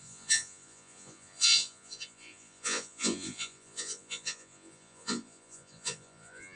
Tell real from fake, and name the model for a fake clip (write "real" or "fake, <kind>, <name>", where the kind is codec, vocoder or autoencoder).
fake, vocoder, Vocos